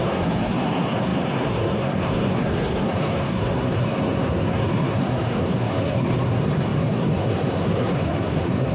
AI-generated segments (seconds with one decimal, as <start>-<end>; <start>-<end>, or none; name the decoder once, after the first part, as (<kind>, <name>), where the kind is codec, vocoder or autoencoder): 0.0-8.7 (codec, SNAC)